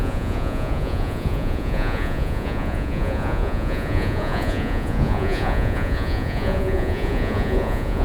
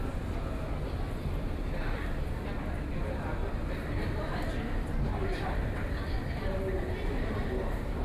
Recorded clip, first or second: second